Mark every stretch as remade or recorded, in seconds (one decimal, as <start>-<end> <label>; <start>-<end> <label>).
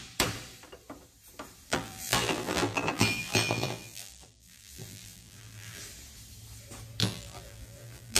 0.0-1.7 recorded; 1.7-5.8 remade; 5.8-7.0 recorded; 7.0-8.2 remade